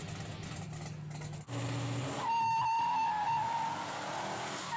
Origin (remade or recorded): recorded